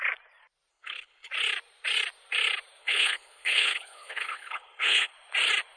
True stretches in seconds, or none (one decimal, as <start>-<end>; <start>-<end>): 0.0-0.7; 1.3-2.8; 5.1-5.8